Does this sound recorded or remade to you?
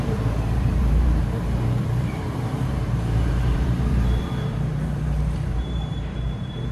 remade